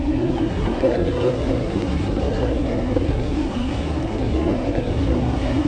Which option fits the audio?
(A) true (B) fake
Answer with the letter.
B